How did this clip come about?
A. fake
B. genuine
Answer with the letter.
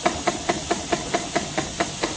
B